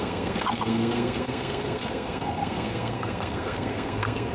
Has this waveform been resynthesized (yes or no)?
yes